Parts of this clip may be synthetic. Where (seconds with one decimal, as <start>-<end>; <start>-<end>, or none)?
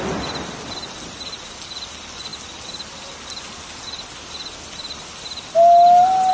none